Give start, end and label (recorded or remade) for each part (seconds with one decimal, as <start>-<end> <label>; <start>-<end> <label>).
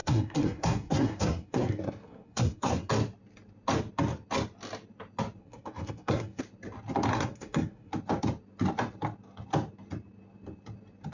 0.0-2.9 remade; 2.9-5.4 recorded; 5.4-6.4 remade; 6.4-7.1 recorded; 7.1-7.9 remade; 7.9-11.1 recorded